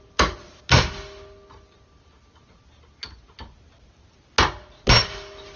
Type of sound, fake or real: real